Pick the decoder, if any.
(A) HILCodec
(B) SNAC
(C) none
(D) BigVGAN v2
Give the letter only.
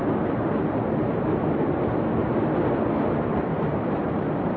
D